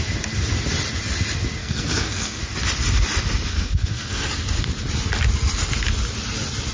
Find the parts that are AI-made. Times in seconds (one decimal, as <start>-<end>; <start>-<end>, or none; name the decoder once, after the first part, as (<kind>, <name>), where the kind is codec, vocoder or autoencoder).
1.6-2.4 (codec, SNAC); 3.5-4.3